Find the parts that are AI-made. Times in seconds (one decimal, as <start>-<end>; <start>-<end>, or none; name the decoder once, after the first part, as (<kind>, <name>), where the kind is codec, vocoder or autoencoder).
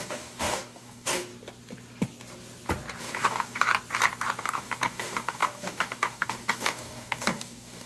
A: 0.0-1.3 (codec, DAC); 3.0-3.7; 4.4-7.9